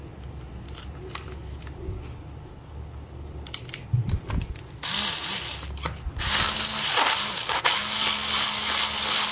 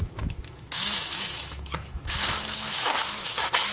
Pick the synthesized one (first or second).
second